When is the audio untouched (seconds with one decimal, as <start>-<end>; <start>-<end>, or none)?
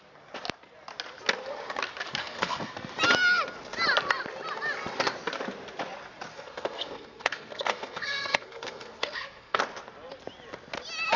0.0-2.2; 2.7-6.3; 9.6-11.2